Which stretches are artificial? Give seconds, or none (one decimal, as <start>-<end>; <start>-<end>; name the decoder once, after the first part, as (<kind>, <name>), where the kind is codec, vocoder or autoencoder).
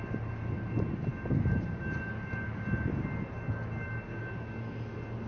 none